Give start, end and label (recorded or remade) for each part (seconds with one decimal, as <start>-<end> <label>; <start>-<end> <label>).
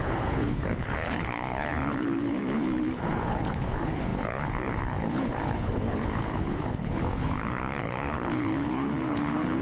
0.0-9.6 remade